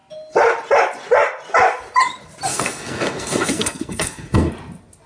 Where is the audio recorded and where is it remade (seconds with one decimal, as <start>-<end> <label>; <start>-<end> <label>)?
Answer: 0.0-2.5 recorded; 2.5-4.5 remade; 4.5-5.1 recorded